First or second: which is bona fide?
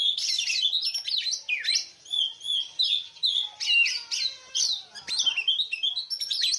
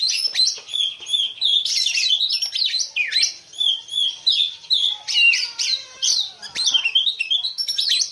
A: first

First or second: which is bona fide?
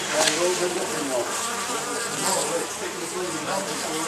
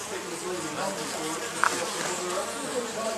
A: second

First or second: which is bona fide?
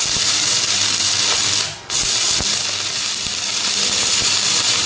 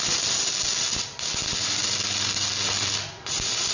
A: second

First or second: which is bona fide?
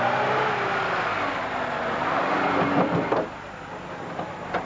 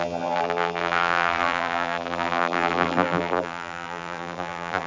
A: first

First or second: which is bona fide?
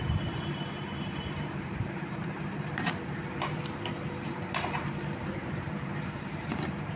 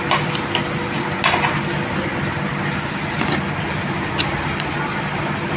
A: second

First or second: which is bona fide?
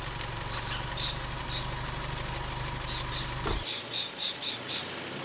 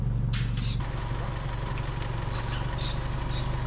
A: second